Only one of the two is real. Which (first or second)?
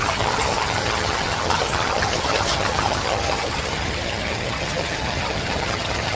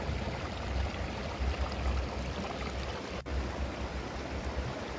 second